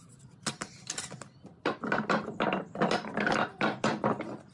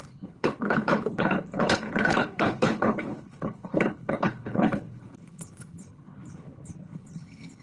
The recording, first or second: first